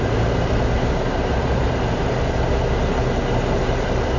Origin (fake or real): real